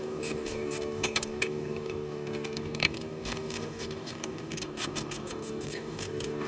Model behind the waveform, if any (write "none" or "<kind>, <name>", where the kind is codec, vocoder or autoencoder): codec, DAC